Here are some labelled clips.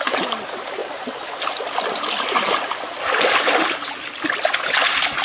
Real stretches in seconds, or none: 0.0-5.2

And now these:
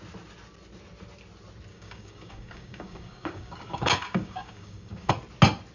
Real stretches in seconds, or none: 0.0-1.7; 5.1-5.7

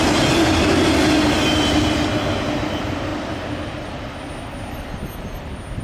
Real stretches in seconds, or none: 0.0-5.8

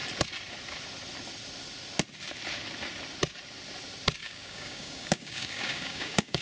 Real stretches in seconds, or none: 0.0-4.2

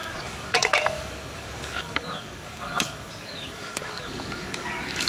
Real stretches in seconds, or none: none